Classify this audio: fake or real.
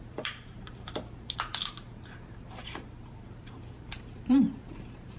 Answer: fake